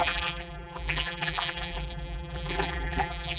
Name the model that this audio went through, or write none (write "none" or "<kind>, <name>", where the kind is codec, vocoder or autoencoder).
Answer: vocoder, BigVGAN v2